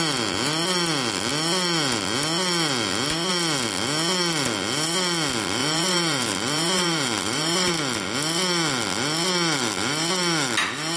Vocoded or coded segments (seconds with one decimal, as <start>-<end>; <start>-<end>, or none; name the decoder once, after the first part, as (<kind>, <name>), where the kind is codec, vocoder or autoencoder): 5.6-7.7 (vocoder, BigVGAN v2)